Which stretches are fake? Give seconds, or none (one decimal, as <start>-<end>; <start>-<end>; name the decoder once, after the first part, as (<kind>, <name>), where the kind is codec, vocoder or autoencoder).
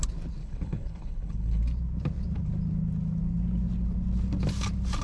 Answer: 0.4-1.6 (codec, HILCodec)